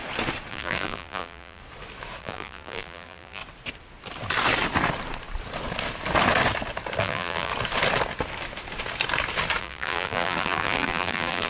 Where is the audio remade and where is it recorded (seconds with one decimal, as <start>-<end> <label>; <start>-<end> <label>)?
0.0-0.5 recorded; 0.5-1.6 remade; 1.6-2.2 recorded; 2.2-3.4 remade; 3.4-7.0 recorded; 7.0-7.5 remade; 7.5-9.6 recorded; 9.6-11.5 remade